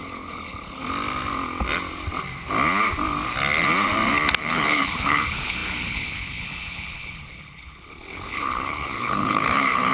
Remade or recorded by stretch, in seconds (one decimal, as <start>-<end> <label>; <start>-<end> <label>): 0.0-0.8 remade; 0.8-4.4 recorded; 4.4-9.9 remade